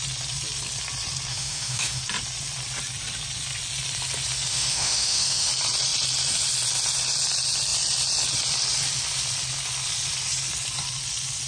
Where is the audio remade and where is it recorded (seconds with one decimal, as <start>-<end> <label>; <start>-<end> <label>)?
0.0-1.3 recorded; 1.3-2.0 remade; 2.0-4.5 recorded; 4.5-5.5 remade; 5.5-11.5 recorded